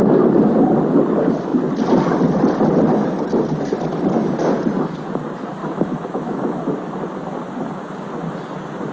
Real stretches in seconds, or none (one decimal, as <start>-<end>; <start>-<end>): 0.0-5.6; 6.6-8.9